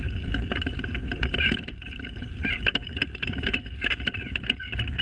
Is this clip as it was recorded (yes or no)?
no